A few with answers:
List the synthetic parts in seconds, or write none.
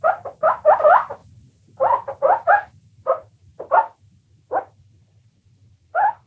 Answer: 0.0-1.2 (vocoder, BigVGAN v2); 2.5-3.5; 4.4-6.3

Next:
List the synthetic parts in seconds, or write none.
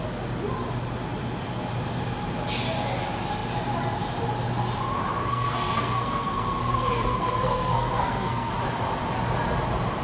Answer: 5.2-8.5 (codec, SNAC)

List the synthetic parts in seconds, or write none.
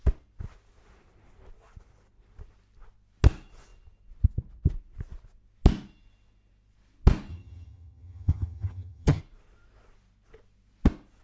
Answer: 7.3-9.2 (vocoder, HiFi-GAN)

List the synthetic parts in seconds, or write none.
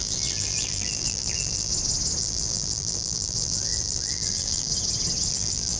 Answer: 0.0-1.7 (vocoder, BigVGAN v2); 2.2-4.7; 5.3-5.8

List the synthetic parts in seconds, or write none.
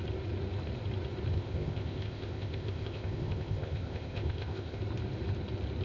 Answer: 1.3-4.8 (codec, ZipCodec)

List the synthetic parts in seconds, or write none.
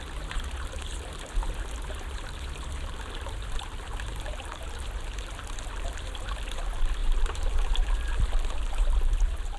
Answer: 7.0-7.7 (vocoder, BigVGAN v2)